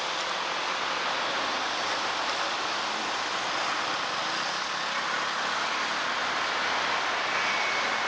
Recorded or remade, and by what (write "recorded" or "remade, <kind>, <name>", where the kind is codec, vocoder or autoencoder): recorded